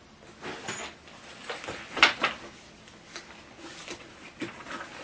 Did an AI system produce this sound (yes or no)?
no